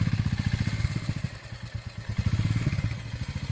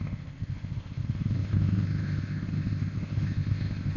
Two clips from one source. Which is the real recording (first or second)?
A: first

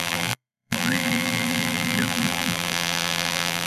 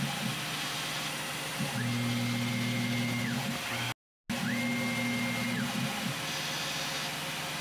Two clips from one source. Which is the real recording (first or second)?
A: second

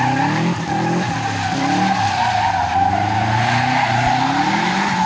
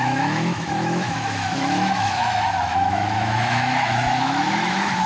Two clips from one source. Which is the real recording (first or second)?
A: first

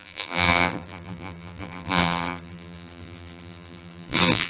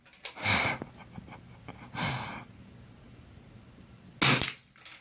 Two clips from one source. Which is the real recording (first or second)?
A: second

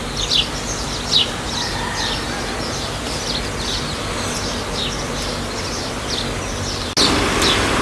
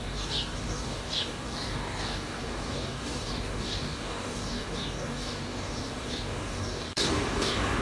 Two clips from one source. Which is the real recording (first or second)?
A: first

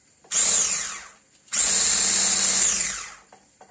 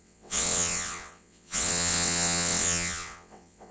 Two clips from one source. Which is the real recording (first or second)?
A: first